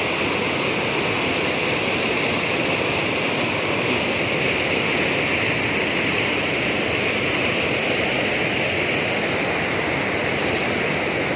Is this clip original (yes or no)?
yes